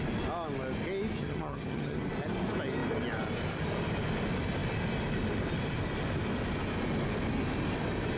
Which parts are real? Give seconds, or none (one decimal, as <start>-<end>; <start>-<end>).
0.0-1.2; 2.0-8.2